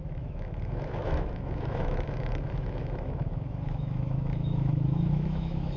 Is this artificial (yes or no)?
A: yes